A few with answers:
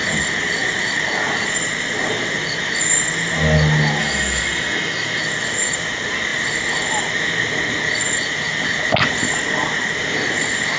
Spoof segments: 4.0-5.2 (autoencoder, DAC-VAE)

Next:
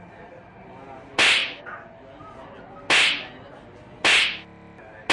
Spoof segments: none

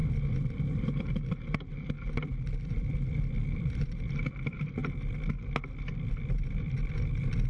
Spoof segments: 0.0-4.8 (vocoder, BigVGAN v2); 6.1-7.5

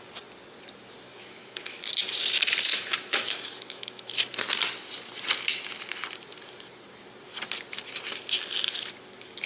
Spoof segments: 1.1-1.8 (autoencoder, DAC-VAE); 2.7-4.3

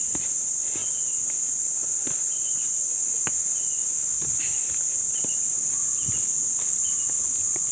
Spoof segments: 0.0-3.8 (vocoder, BigVGAN v2); 4.4-7.7

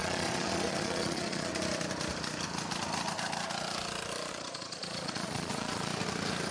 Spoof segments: 0.0-1.5 (vocoder, Vocos); 4.3-5.9

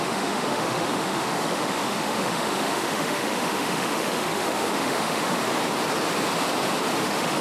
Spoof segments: 0.0-5.4 (autoencoder, DAC-VAE); 7.0-7.4